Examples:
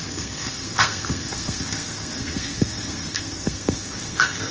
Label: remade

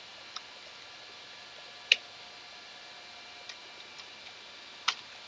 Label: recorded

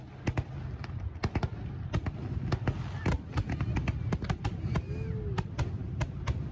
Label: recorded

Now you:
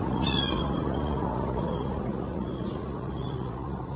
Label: remade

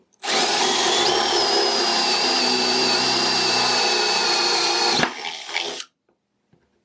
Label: recorded